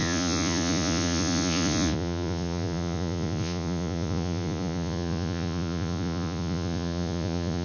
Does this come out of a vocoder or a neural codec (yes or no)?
yes